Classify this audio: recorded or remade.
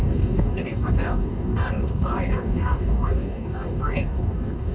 remade